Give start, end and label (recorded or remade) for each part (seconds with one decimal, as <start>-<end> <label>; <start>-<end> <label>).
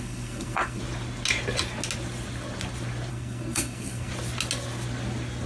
0.0-0.8 remade; 0.8-3.1 recorded; 3.1-4.1 remade; 4.1-5.5 recorded